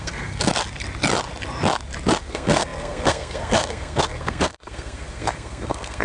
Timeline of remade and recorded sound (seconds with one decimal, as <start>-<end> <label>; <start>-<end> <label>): 0.0-0.5 remade; 0.5-2.2 recorded; 2.2-6.0 remade